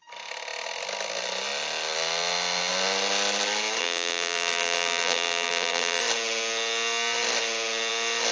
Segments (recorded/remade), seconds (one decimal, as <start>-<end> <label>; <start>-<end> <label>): 0.0-3.8 recorded; 3.8-6.0 remade; 6.0-8.3 recorded